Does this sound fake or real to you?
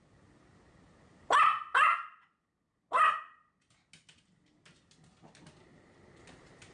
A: real